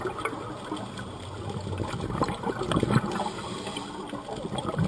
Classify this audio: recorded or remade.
recorded